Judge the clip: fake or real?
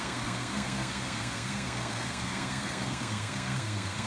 fake